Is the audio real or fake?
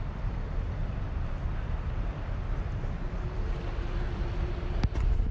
real